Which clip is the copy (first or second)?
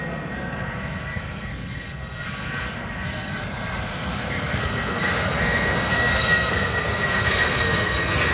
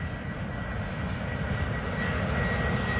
first